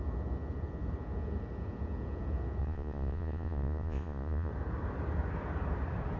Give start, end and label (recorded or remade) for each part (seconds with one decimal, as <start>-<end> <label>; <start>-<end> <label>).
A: 0.0-2.6 recorded; 2.6-4.5 remade; 4.5-6.2 recorded